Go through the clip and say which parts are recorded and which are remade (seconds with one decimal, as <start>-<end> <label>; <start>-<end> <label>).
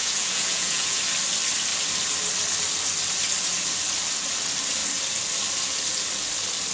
0.0-1.0 remade; 1.0-6.7 recorded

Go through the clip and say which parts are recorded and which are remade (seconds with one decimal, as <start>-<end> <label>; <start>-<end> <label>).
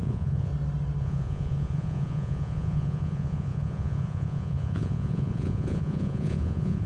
0.0-0.5 remade; 0.5-1.0 recorded; 1.0-6.9 remade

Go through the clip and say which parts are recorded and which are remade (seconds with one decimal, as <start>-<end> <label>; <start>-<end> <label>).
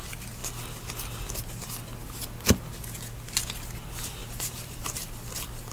0.0-4.2 recorded; 4.2-5.7 remade